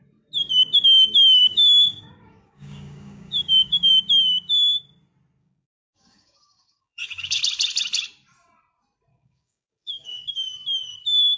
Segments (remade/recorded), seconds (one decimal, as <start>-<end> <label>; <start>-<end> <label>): 0.0-1.4 recorded; 1.4-3.9 remade; 3.9-5.4 recorded; 5.4-7.4 remade; 7.4-9.1 recorded; 9.1-10.3 remade; 10.3-11.4 recorded